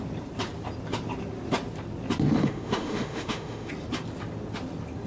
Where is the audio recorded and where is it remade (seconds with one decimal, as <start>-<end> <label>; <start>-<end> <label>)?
0.0-2.4 recorded; 2.4-3.7 remade; 3.7-5.1 recorded